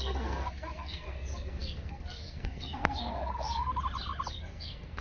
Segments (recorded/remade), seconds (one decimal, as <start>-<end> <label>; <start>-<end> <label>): 0.0-3.7 remade; 3.7-4.3 recorded; 4.3-5.0 remade